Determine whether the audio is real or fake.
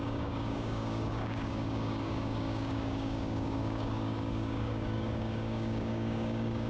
fake